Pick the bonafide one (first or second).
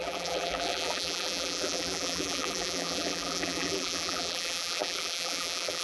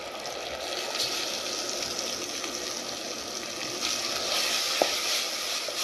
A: second